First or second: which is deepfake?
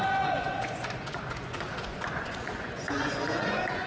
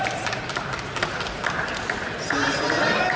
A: first